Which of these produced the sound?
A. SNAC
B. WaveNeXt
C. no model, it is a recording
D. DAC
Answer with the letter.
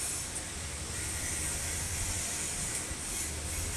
C